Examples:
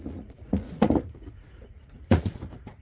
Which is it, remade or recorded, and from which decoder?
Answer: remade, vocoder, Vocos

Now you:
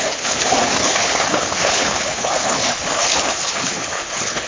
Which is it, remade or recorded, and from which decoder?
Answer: remade, codec, HILCodec